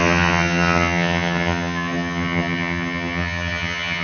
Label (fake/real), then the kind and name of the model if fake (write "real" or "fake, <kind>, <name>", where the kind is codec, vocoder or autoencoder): fake, vocoder, HiFi-GAN